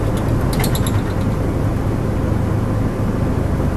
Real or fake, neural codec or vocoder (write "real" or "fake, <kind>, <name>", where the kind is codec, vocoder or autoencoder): real